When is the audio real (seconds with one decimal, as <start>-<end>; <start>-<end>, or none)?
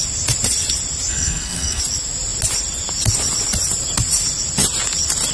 0.0-1.1; 1.8-5.3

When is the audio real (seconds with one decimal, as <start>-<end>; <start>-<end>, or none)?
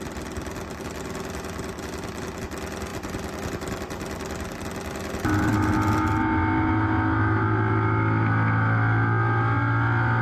0.0-10.2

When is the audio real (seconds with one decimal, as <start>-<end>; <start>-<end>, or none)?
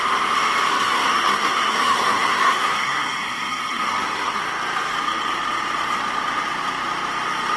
0.0-0.7; 4.4-7.6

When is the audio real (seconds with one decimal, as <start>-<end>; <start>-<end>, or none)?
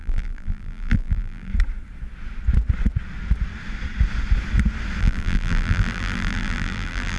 1.5-5.0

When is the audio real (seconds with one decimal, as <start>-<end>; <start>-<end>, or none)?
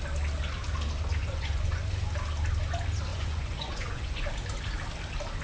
0.0-1.2; 1.8-3.1; 4.3-5.4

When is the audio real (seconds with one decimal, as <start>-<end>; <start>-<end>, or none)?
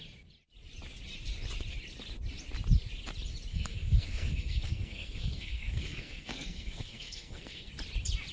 0.0-3.5; 7.7-8.3